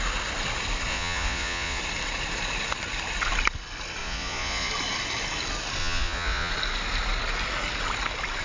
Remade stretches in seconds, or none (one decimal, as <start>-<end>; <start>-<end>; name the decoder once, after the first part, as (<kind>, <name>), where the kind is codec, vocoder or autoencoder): 0.9-1.8 (vocoder, Vocos); 4.0-4.7; 5.8-6.5